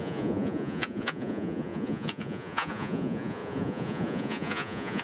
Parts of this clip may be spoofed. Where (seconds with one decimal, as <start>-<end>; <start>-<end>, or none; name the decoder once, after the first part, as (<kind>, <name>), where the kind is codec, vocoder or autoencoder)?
0.0-5.0 (vocoder, Vocos)